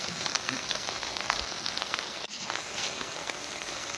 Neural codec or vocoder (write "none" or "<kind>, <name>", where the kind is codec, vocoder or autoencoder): codec, SNAC